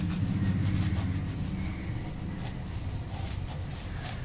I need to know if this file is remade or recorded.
recorded